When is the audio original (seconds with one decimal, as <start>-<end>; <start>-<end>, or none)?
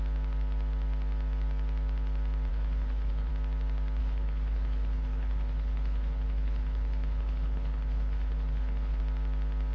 0.0-2.5; 3.3-4.0; 9.0-9.7